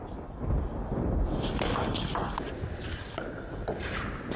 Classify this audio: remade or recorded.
recorded